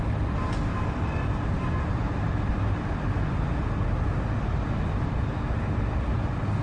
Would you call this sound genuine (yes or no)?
yes